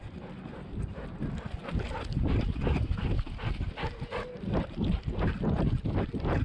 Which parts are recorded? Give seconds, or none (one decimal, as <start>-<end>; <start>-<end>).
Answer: 0.0-6.4